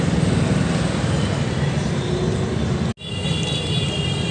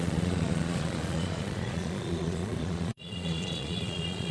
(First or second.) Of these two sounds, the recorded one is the first